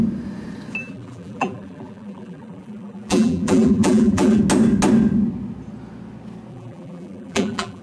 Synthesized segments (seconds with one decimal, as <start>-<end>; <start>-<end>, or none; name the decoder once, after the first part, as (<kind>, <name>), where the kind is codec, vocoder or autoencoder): 0.8-4.4 (vocoder, BigVGAN v2); 6.5-7.8